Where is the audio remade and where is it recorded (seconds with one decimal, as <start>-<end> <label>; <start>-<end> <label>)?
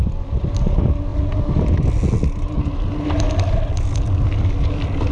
0.0-5.1 recorded